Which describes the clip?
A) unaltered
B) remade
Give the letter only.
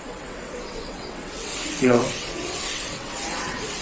B